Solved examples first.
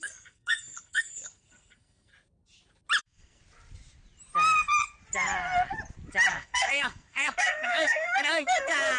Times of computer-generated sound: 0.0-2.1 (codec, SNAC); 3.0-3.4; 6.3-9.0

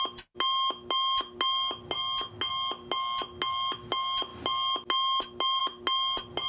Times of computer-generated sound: none

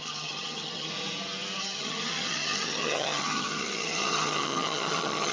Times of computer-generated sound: 0.0-0.9 (vocoder, HiFi-GAN); 1.6-5.3

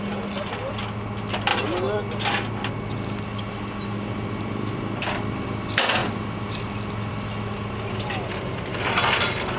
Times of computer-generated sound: none

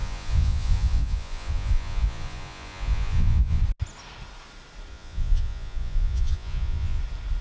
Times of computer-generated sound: 0.0-3.6 (vocoder, Vocos); 4.9-7.0